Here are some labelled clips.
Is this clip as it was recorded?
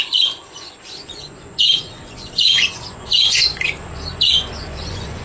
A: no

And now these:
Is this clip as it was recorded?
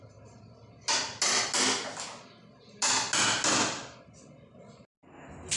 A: yes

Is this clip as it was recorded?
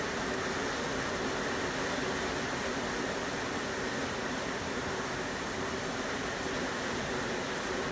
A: yes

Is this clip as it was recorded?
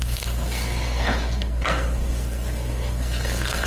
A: no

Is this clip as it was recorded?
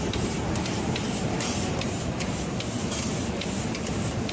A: no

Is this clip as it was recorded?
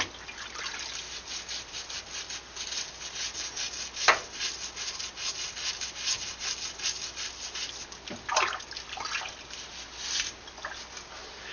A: yes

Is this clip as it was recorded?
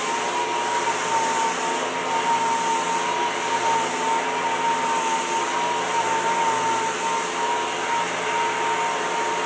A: yes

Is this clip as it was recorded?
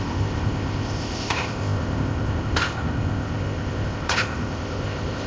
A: no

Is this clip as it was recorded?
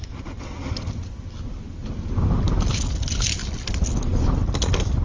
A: yes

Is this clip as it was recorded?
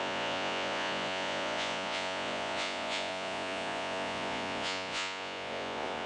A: no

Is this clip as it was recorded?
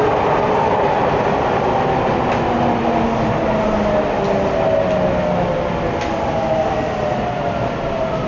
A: yes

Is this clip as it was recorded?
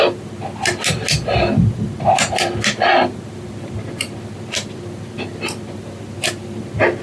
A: yes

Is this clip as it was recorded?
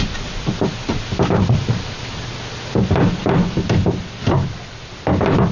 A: yes